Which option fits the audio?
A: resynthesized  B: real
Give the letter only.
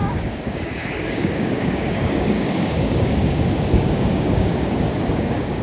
A